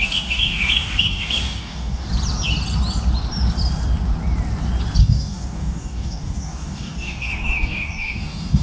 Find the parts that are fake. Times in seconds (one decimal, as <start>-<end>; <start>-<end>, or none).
0.0-2.1; 5.0-8.6

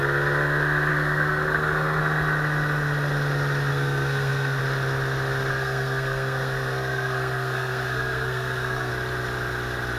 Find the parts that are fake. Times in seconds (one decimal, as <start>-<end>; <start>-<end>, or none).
0.9-2.0; 3.7-4.6; 5.5-8.9

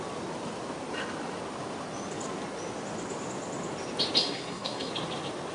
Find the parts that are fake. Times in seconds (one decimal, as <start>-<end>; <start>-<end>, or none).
4.2-4.9

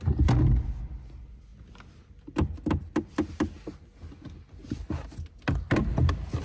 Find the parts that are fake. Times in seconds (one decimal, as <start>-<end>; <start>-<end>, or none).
none

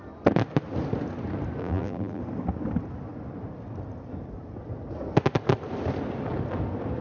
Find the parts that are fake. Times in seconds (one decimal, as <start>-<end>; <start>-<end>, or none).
1.6-2.2

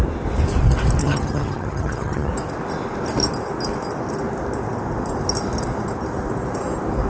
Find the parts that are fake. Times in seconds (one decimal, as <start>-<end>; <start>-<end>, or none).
1.0-2.3